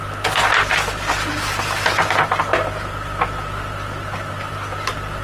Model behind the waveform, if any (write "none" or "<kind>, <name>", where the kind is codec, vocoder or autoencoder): none